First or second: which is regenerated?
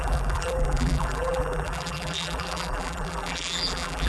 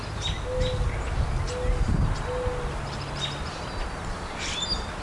first